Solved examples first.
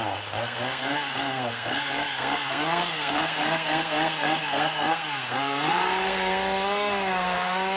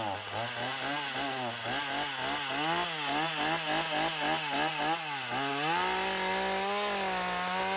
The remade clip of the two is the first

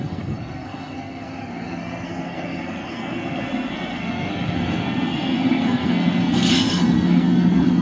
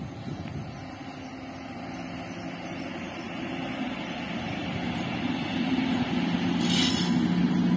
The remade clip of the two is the first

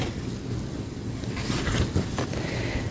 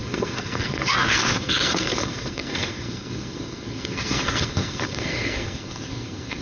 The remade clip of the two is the second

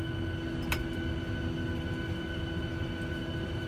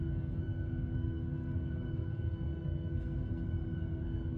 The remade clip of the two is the second